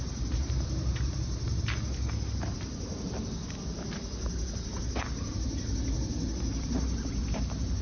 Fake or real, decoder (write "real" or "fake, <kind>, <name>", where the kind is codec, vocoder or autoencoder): real